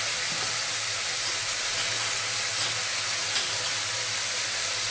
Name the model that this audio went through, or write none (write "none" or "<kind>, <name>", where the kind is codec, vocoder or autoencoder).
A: none